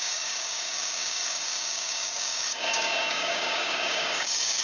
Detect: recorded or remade remade